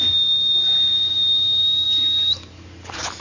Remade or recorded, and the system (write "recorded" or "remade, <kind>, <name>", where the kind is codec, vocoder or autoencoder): recorded